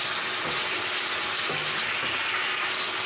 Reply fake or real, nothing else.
real